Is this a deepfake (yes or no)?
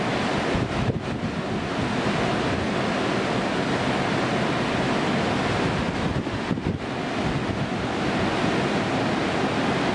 no